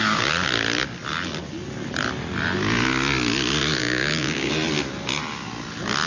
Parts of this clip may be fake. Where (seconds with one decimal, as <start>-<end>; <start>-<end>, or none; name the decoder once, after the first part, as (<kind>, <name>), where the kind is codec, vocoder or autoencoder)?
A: 3.8-4.5 (codec, DAC)